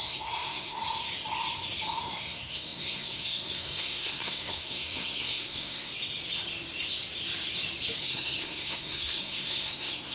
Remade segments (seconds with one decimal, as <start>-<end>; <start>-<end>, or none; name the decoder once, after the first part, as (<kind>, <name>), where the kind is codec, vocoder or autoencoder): 0.0-0.8 (codec, SNAC); 2.0-5.9; 8.0-10.1